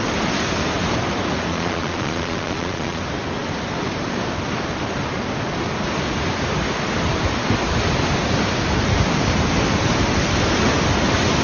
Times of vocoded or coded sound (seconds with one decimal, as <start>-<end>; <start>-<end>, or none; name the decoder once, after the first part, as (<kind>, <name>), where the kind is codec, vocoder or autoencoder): 1.5-3.0 (vocoder, Vocos)

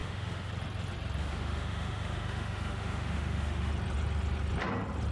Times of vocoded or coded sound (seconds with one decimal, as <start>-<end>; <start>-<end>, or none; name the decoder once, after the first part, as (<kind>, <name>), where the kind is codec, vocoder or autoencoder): 0.0-0.5 (autoencoder, DAC-VAE); 1.2-3.7

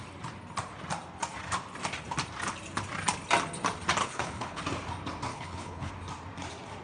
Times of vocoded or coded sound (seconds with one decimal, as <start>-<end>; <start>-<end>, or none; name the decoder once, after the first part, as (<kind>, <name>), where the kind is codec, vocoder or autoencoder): 4.0-4.6 (codec, HILCodec); 5.3-5.9

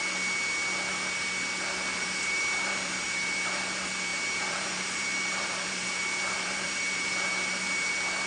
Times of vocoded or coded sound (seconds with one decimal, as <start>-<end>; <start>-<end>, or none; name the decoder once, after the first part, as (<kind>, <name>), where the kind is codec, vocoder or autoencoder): 1.9-3.6 (vocoder, BigVGAN v2); 4.1-7.9

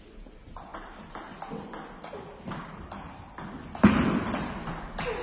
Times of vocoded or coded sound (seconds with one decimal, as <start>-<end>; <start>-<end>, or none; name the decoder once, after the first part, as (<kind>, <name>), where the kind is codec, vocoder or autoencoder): none

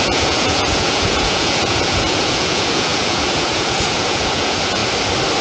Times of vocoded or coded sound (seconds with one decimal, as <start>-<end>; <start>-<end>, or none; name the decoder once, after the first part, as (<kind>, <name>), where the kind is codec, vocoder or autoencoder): 0.0-4.8 (vocoder, Vocos)

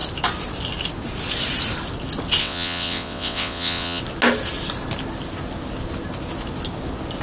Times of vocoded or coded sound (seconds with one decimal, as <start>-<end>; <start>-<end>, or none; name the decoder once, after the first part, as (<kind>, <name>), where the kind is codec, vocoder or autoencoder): 2.4-4.0 (vocoder, WaveNeXt)